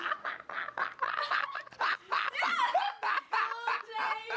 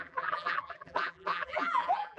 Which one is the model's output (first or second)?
second